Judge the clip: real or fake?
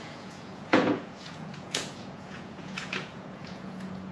fake